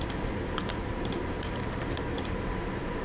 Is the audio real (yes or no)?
no